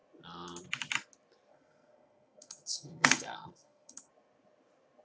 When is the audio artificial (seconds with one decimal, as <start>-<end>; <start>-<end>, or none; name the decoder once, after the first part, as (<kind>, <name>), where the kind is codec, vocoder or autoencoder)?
1.5-4.1 (codec, SNAC)